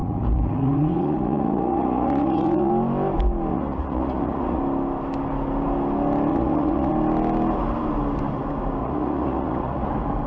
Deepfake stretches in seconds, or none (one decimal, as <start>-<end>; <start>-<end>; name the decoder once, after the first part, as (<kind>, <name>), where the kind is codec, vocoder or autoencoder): 0.0-2.7 (vocoder, Vocos); 3.5-4.6; 6.3-6.9; 8.8-9.9

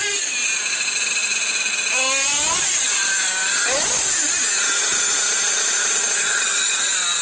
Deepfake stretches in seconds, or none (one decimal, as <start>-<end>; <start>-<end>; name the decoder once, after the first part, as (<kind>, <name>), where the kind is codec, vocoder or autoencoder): none